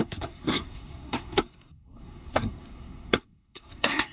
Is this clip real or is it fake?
fake